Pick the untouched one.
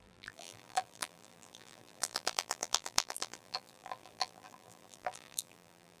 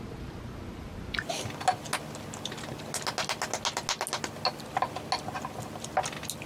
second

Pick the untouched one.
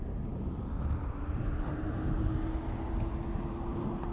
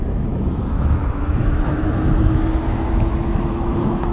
first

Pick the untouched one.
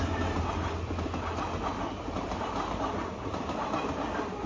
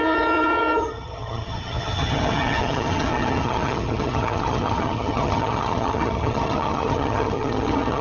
first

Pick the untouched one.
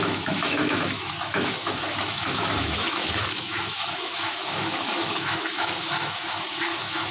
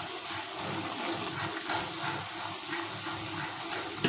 second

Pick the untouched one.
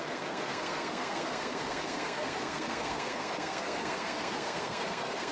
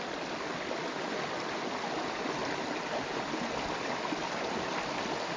second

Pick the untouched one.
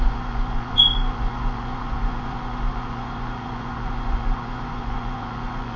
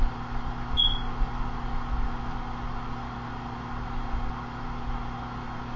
second